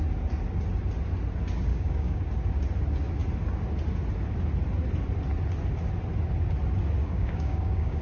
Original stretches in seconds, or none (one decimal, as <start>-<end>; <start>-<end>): 0.0-1.7; 2.2-7.0